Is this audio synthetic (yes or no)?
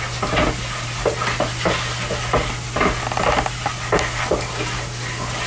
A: no